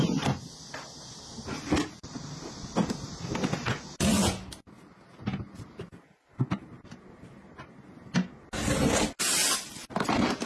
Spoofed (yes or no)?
no